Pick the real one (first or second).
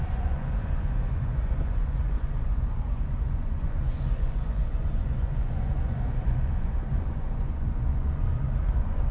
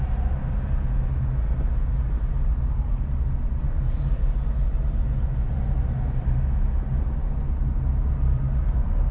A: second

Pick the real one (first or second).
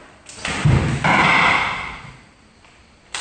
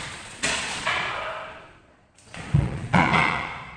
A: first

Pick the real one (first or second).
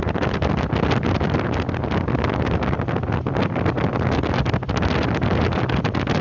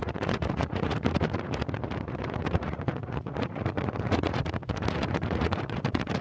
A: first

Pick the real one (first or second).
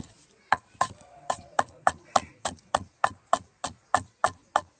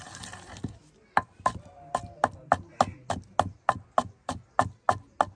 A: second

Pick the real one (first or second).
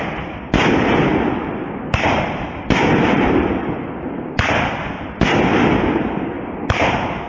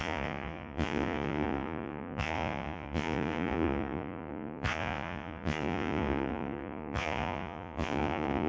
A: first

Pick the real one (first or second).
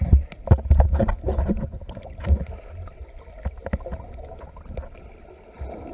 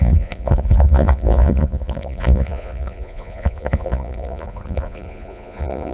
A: first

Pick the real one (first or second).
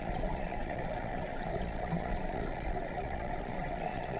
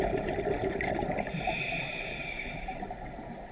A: second